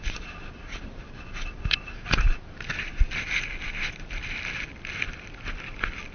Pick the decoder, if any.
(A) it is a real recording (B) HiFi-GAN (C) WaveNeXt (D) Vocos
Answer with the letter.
A